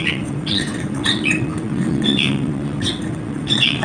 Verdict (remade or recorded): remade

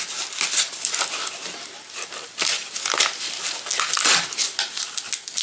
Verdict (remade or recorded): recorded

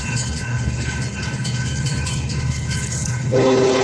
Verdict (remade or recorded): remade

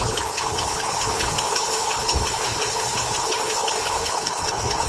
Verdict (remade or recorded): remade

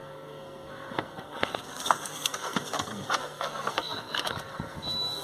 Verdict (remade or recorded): remade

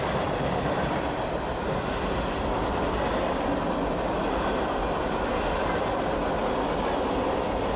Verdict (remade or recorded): recorded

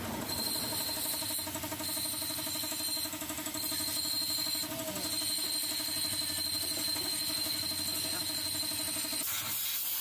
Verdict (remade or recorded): recorded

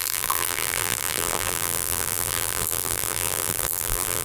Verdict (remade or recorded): remade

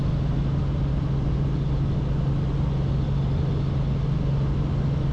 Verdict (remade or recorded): recorded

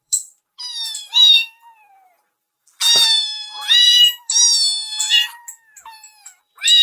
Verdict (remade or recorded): remade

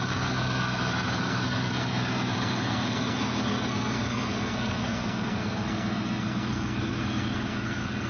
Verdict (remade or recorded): remade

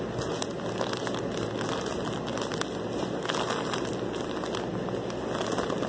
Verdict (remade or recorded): recorded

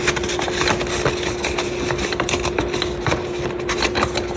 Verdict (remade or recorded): recorded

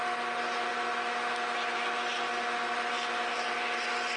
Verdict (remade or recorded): recorded